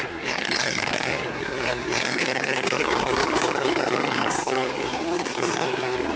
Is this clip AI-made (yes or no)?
yes